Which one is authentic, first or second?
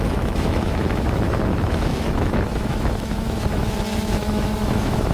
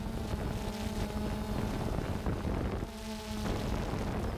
second